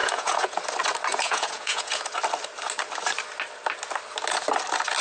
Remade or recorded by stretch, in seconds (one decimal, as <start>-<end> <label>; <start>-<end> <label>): 0.0-0.6 remade; 0.6-1.1 recorded; 1.1-2.0 remade; 2.0-5.0 recorded